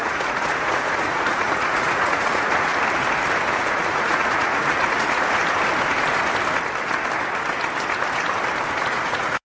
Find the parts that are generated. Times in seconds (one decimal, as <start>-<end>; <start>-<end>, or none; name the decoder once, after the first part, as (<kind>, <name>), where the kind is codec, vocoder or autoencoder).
0.0-2.7 (vocoder, Vocos); 3.5-5.4; 8.8-9.4